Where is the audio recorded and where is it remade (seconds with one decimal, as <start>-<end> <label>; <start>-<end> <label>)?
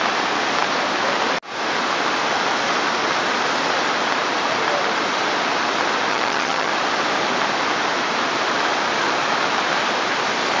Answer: 0.0-6.1 recorded; 6.1-6.7 remade; 6.7-10.6 recorded